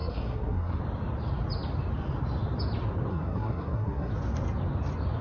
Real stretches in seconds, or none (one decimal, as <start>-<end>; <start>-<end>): 0.8-3.1; 4.1-5.2